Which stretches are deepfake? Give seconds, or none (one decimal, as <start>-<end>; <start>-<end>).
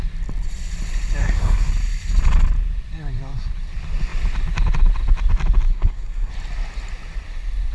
1.2-1.7; 5.7-6.3